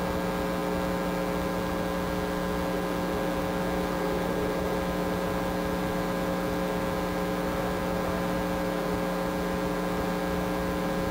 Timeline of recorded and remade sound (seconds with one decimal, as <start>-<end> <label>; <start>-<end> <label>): 0.0-11.1 recorded